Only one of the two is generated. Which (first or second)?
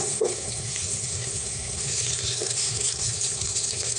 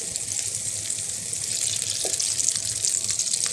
first